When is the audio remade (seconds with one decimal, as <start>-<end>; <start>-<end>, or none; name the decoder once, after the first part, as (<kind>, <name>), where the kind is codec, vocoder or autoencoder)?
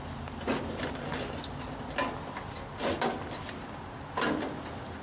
none